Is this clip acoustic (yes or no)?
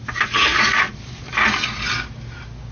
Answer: yes